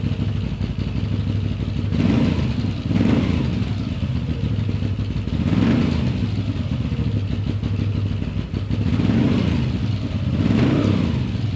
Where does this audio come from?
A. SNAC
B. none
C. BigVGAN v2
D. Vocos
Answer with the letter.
B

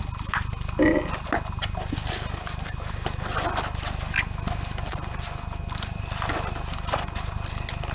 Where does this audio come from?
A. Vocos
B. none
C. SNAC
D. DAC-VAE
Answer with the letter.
B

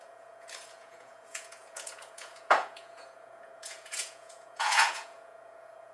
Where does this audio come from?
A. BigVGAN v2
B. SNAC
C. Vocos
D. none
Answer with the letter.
C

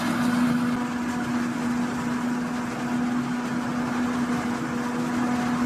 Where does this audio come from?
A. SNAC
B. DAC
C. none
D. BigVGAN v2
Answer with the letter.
C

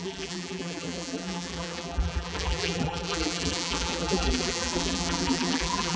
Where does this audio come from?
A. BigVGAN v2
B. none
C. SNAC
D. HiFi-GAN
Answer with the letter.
A